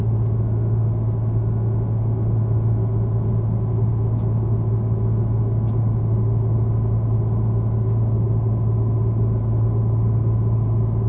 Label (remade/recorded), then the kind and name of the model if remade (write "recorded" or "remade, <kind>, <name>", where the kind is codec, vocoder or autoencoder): recorded